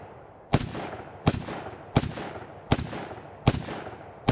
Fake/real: real